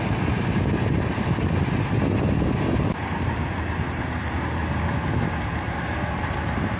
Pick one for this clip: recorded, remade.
recorded